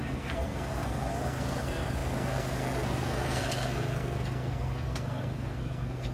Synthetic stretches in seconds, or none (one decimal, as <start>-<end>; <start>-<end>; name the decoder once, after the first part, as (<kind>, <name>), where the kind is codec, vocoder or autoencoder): 0.0-6.1 (codec, SNAC)